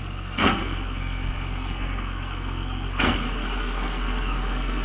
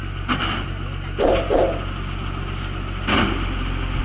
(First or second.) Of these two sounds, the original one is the second